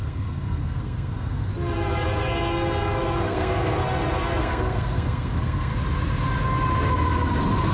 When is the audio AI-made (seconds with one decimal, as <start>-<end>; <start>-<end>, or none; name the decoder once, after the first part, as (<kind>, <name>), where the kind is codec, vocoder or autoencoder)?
0.0-1.5 (codec, SNAC); 3.2-3.8; 4.4-5.7